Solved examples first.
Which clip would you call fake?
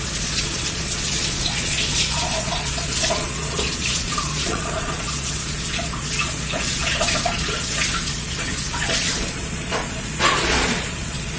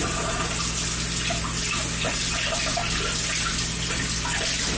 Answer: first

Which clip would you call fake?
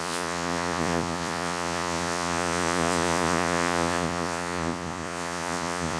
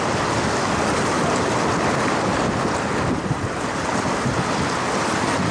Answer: first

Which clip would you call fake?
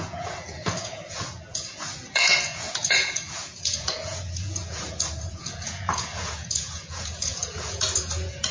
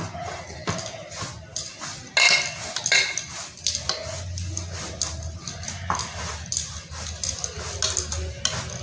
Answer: first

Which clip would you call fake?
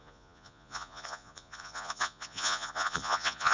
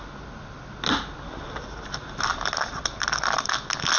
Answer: first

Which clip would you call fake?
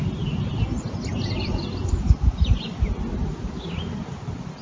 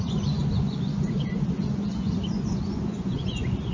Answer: second